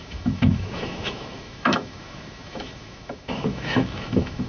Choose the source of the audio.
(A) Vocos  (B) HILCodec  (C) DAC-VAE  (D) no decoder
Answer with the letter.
C